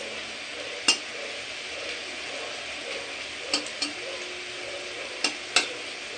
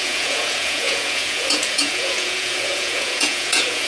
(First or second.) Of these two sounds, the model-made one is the second